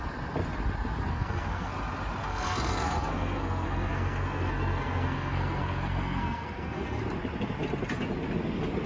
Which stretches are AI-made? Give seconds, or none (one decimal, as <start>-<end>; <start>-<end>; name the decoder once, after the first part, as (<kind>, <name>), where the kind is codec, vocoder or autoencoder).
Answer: 1.1-1.7 (codec, SNAC); 2.2-7.0